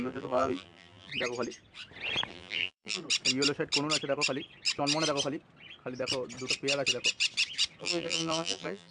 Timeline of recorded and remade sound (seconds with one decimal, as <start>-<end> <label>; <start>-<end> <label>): 0.0-1.1 remade; 1.1-2.3 recorded; 2.3-3.0 remade; 3.0-7.8 recorded; 7.8-8.9 remade